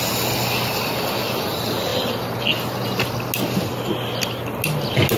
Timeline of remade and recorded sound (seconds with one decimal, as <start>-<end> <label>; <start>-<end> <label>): 0.0-5.2 recorded